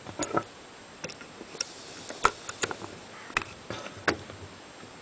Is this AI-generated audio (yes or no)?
no